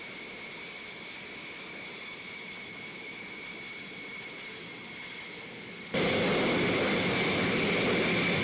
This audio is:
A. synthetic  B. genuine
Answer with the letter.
B